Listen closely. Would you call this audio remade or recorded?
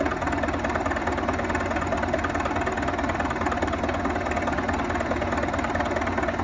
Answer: recorded